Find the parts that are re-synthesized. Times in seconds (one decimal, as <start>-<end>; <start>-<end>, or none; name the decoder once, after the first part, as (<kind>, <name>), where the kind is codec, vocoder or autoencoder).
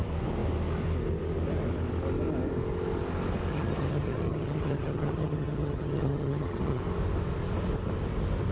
3.5-6.8 (vocoder, HiFi-GAN)